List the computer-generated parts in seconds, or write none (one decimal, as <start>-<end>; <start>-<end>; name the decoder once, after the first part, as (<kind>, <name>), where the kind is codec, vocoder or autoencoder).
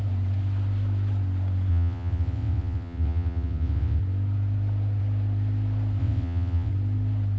1.7-4.0 (vocoder, WaveNeXt); 6.0-6.7